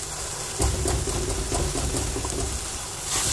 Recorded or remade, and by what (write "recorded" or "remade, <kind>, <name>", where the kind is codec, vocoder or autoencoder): recorded